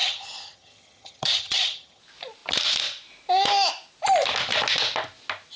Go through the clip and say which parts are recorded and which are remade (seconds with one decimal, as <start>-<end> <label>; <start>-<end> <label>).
0.0-2.0 remade; 2.0-5.6 recorded